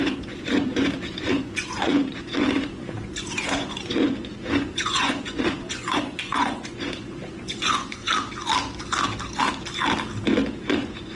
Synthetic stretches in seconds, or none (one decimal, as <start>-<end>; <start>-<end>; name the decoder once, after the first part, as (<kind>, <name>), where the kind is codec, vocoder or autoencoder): 0.0-8.0 (vocoder, Vocos); 10.6-11.2